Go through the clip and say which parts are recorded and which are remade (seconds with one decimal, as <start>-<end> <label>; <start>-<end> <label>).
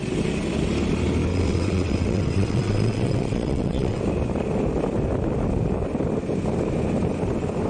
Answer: 0.0-1.3 recorded; 1.3-4.0 remade; 4.0-7.7 recorded